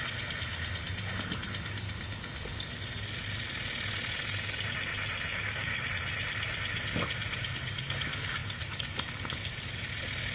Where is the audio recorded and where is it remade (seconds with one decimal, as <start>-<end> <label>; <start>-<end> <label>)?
0.0-5.3 recorded; 5.3-5.9 remade; 5.9-10.3 recorded